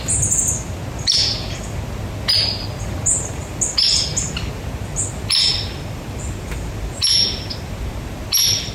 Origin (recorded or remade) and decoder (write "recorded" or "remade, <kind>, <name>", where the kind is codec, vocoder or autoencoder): recorded